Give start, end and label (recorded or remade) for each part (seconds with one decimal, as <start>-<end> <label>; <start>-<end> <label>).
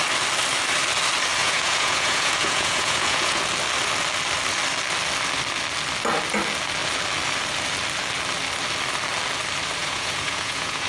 0.0-1.4 recorded; 1.4-3.4 remade; 3.4-9.8 recorded; 9.8-10.9 remade